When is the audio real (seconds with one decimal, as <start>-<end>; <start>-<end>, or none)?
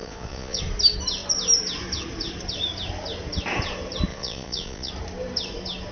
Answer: 0.6-4.1; 4.9-5.9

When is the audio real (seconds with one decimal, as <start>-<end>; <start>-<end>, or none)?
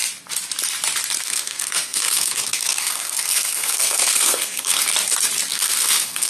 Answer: 0.0-1.2; 4.9-5.5